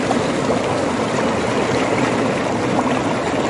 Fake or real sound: real